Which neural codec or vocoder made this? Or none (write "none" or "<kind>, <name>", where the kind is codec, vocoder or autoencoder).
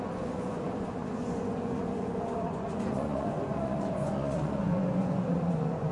vocoder, Vocos